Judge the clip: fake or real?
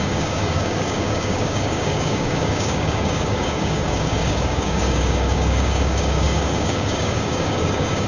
fake